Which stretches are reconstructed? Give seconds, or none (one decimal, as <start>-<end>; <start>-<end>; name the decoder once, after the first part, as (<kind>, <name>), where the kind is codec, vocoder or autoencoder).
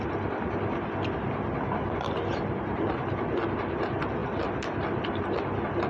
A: none